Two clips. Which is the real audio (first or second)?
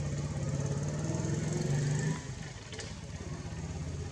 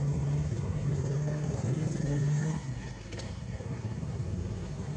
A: first